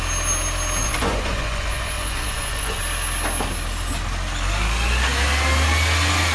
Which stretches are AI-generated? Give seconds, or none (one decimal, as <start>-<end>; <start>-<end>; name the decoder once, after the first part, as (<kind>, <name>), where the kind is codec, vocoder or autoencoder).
0.8-2.8 (vocoder, Vocos)